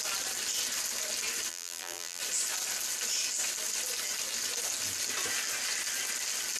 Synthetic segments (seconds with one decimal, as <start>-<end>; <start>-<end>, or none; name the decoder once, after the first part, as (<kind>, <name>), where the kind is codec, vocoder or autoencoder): 1.5-2.2 (vocoder, BigVGAN v2)